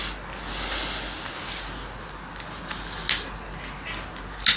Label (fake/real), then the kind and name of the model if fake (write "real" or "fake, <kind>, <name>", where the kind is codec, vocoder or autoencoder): real